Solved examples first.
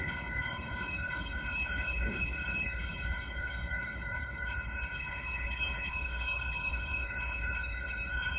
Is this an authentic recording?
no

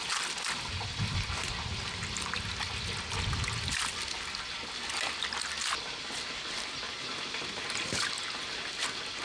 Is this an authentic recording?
yes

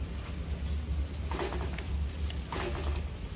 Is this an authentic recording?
yes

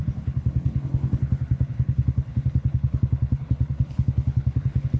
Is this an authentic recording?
no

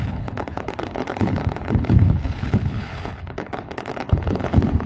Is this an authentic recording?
no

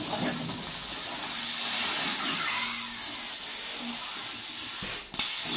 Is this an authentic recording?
yes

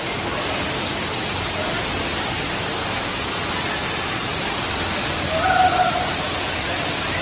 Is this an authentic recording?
yes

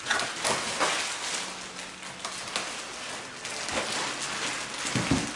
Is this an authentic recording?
yes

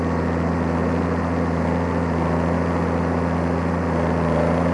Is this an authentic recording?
yes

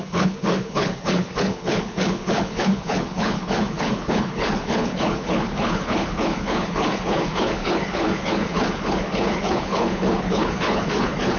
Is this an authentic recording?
no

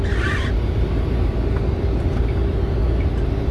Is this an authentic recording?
yes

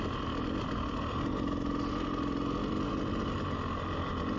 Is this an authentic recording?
yes